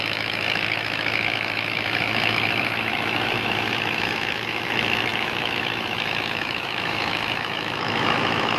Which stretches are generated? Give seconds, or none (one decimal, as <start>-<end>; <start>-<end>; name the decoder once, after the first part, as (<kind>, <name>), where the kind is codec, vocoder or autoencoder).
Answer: 0.0-8.6 (autoencoder, DAC-VAE)